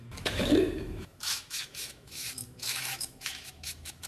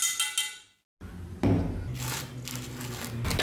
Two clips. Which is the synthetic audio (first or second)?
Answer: first